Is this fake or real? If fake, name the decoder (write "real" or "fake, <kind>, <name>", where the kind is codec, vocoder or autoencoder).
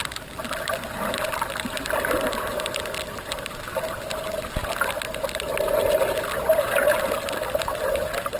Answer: real